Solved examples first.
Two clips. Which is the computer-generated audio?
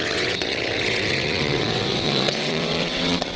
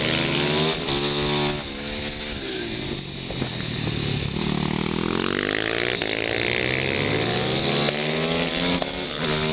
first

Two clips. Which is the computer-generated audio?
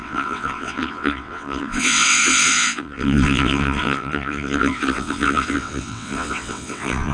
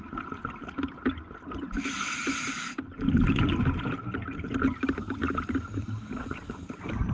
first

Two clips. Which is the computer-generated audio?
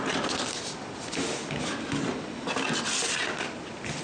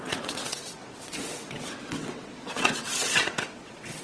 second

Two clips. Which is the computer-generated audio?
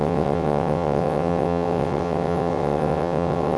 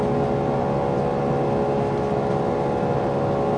first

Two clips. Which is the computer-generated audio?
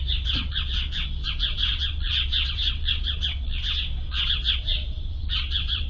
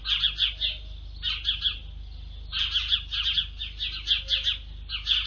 first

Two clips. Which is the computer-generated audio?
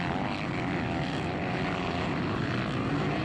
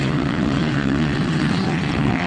second